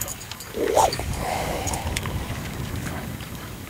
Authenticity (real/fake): fake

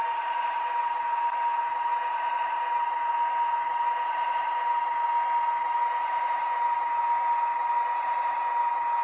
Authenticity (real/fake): real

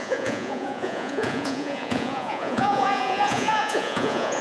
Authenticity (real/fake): fake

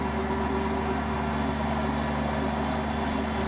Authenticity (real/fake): real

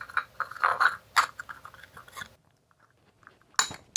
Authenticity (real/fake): real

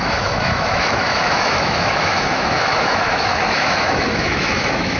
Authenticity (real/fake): fake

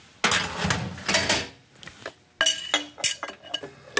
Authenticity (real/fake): real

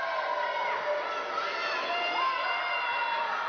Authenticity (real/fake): real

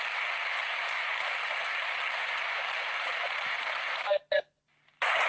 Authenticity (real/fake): real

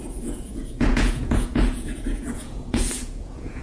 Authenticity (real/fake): fake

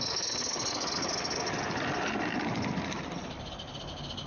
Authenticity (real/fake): real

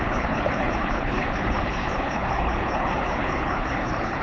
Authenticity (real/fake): fake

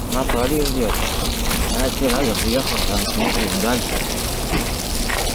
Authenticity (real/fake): real